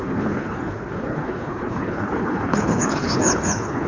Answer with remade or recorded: remade